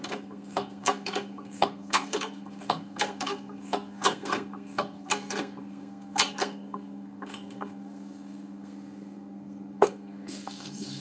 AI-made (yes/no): yes